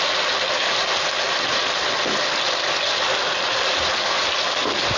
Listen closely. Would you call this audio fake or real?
real